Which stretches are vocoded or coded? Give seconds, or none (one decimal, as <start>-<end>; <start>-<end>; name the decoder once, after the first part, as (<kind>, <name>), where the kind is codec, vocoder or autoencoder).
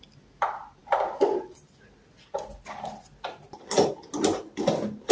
none